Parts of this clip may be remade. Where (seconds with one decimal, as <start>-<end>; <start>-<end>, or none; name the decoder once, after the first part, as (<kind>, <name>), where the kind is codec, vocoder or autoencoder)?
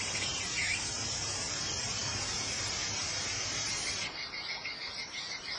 0.0-5.6 (vocoder, BigVGAN v2)